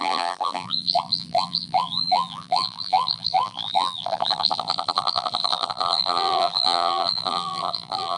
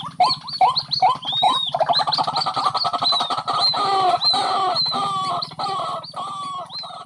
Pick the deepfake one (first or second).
first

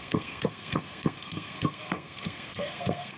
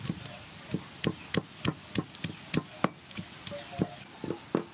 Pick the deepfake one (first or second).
first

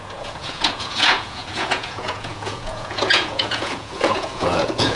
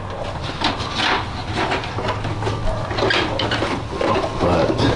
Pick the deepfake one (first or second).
first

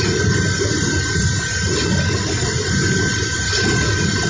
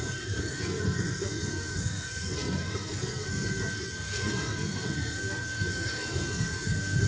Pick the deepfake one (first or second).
second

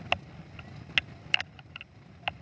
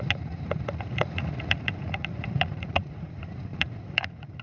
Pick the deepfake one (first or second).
second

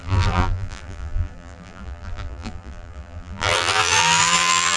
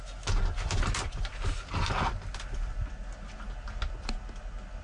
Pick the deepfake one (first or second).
first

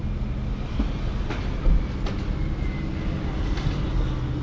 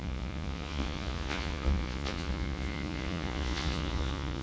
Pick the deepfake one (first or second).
second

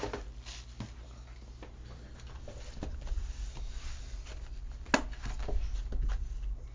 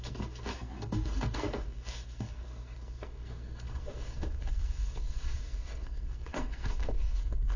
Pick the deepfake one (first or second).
second